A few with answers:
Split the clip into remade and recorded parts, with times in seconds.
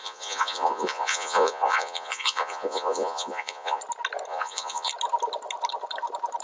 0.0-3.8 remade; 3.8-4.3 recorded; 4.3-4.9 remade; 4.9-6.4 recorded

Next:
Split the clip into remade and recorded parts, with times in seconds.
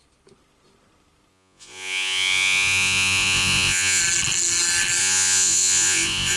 0.0-1.3 recorded; 1.3-4.0 remade; 4.0-5.0 recorded; 5.0-6.4 remade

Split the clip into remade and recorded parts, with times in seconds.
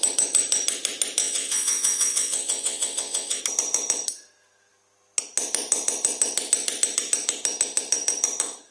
0.0-1.2 recorded; 1.2-3.4 remade; 3.4-8.7 recorded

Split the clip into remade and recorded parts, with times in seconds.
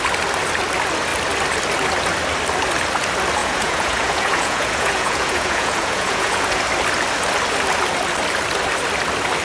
0.0-3.4 recorded; 3.4-6.6 remade; 6.6-9.4 recorded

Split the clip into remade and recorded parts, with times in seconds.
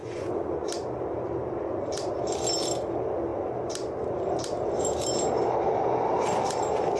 0.0-0.7 remade; 0.7-7.0 recorded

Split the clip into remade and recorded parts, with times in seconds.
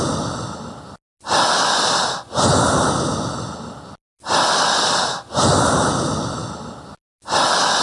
0.0-7.8 recorded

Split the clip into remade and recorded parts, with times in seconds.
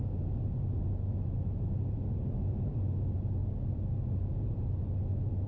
0.0-5.5 recorded